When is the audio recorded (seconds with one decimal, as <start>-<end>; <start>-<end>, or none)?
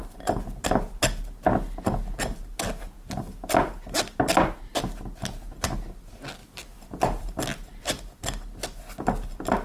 0.0-6.4; 7.4-9.6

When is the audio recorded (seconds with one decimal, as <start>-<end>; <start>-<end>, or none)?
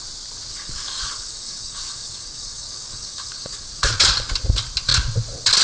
0.0-0.5; 3.9-5.6